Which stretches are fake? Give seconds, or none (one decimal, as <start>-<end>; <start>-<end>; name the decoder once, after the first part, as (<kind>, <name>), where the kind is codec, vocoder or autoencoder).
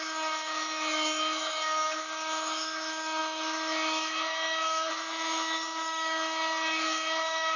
0.0-7.6 (autoencoder, DAC-VAE)